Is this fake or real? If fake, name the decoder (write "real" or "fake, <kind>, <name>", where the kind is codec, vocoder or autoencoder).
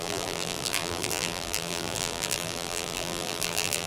fake, vocoder, BigVGAN v2